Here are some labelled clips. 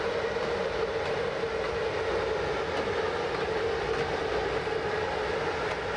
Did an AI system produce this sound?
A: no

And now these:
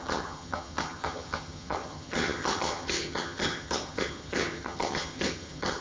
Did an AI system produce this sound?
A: yes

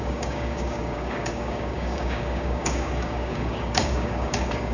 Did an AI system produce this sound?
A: yes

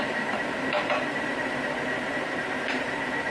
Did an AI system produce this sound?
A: yes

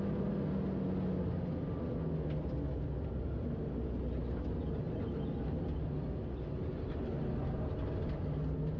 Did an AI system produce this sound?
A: no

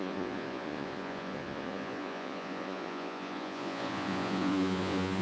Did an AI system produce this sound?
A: yes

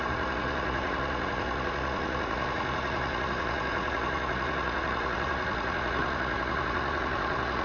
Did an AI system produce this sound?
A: yes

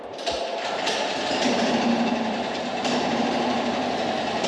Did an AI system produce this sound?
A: yes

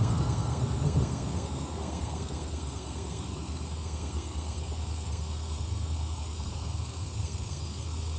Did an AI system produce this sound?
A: yes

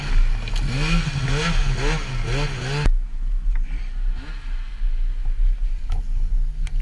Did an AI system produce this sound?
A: no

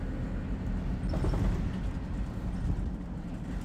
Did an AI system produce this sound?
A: no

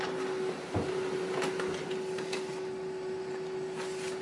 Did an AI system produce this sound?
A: no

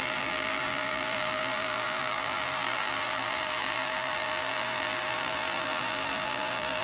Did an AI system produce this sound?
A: yes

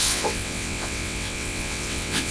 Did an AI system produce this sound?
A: yes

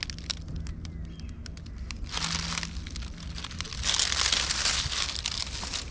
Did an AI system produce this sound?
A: no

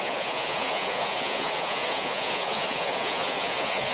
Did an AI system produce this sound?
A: yes